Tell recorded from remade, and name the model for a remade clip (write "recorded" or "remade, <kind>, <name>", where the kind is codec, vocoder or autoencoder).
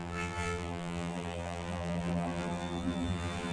remade, vocoder, BigVGAN v2